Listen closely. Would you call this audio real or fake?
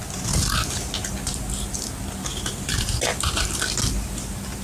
real